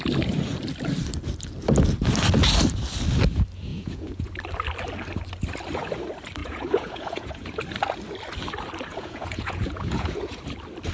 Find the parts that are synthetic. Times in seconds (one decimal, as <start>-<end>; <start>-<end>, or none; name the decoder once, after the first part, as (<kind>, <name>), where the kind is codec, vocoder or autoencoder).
3.7-4.3 (vocoder, Vocos); 6.4-7.6; 8.9-10.4